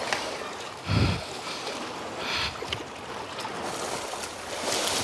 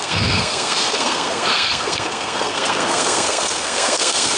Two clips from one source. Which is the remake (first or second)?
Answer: second